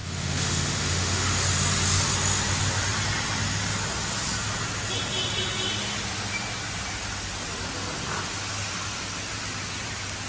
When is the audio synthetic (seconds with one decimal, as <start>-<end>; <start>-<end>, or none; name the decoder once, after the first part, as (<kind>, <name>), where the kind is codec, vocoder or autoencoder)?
0.0-1.4 (autoencoder, DAC-VAE)